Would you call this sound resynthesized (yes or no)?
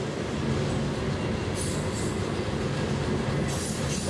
no